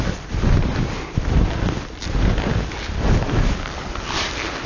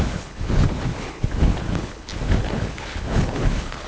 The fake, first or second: second